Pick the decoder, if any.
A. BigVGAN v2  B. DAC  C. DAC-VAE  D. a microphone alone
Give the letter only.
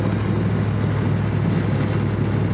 D